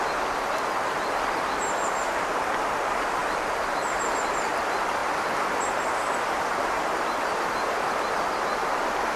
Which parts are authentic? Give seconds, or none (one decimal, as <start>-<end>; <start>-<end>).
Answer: 0.0-9.2

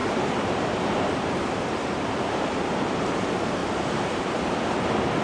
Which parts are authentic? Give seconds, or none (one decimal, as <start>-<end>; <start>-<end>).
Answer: 3.1-3.6; 4.3-5.2

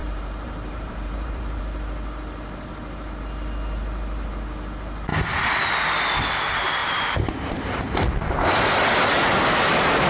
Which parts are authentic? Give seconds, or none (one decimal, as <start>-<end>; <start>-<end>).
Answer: 1.6-6.8; 7.8-10.1